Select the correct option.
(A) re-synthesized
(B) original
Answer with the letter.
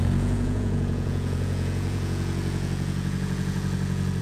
A